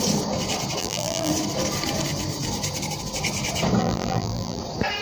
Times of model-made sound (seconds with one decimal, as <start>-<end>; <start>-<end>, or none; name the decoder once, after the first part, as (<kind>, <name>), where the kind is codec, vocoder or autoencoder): 0.8-1.3 (vocoder, BigVGAN v2); 3.8-4.6